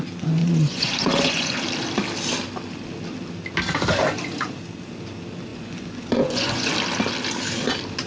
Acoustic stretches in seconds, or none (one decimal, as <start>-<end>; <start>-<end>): 0.0-0.4; 1.6-5.5; 6.7-8.1